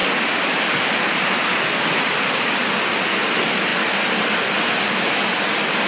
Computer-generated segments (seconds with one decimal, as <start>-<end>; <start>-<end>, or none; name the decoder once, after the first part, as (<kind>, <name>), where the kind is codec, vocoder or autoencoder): none